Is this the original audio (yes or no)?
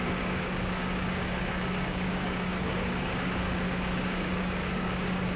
no